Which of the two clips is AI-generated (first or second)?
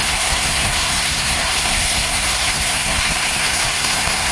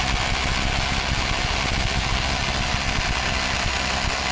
first